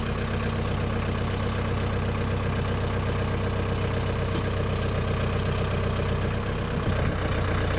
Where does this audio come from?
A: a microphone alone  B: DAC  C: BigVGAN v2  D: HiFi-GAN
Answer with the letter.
A